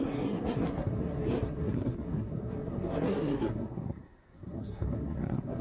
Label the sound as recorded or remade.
remade